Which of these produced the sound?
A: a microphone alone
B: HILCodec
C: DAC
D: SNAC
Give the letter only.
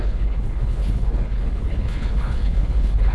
B